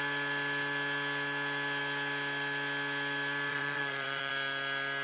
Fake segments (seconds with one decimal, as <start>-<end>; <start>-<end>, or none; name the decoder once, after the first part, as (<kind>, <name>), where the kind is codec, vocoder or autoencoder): 3.5-4.3 (vocoder, WaveNeXt)